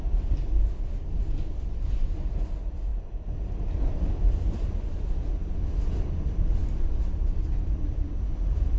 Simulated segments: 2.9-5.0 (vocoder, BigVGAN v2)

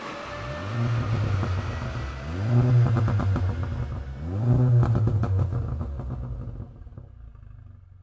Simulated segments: none